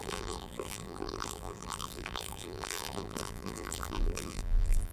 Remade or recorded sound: remade